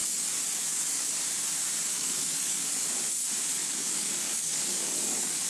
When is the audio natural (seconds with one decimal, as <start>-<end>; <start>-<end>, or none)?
1.1-1.9; 2.9-3.6

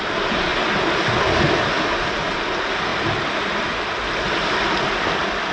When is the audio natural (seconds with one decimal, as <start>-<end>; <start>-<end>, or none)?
0.0-5.5

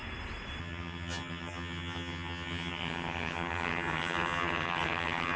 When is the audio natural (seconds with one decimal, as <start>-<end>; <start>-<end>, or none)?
0.0-0.6

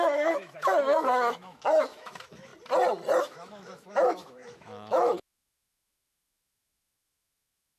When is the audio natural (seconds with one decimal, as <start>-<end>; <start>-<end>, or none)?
2.5-3.2

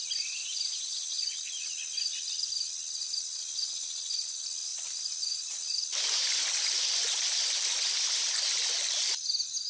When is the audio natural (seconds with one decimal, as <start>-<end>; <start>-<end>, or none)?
0.0-9.7